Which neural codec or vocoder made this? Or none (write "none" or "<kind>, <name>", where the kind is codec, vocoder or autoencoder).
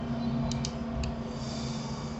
none